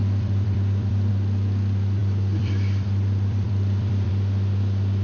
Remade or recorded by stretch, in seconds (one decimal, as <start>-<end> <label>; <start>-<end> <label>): 0.0-1.1 remade; 1.1-2.0 recorded; 2.0-4.1 remade; 4.1-5.0 recorded